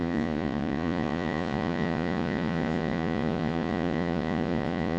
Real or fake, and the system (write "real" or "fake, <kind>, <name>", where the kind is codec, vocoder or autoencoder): fake, vocoder, Vocos